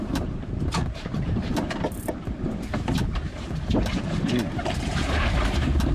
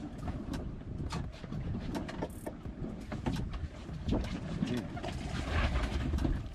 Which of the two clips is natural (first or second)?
second